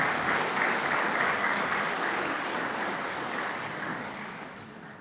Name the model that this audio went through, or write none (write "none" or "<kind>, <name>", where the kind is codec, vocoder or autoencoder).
codec, DAC